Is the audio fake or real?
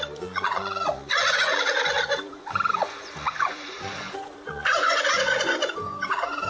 fake